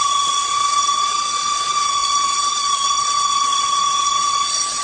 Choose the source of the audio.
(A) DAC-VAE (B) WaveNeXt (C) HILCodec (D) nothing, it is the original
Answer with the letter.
B